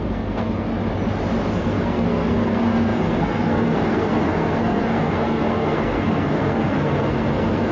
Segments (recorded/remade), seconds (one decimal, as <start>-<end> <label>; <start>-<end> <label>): 0.0-0.7 remade; 0.7-1.5 recorded; 1.5-7.7 remade